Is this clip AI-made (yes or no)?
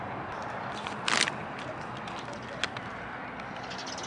no